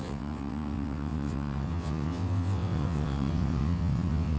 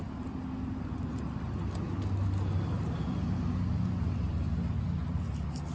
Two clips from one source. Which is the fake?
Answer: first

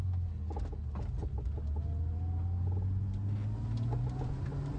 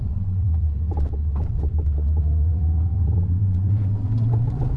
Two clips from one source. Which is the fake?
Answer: second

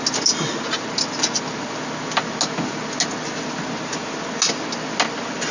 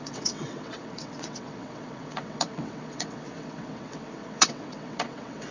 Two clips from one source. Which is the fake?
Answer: second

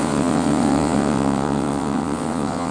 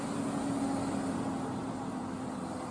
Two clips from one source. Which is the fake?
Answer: first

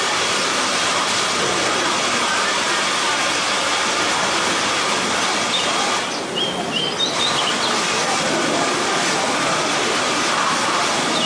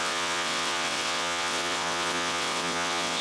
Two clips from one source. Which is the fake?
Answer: second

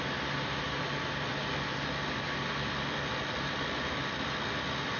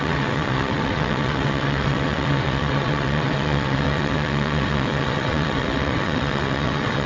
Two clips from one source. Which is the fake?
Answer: second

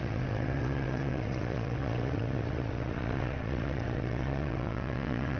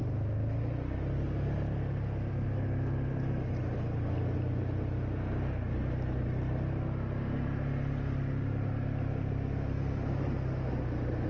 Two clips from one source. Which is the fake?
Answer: first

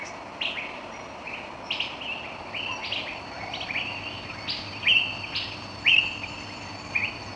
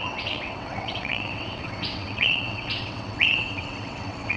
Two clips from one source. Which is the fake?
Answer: second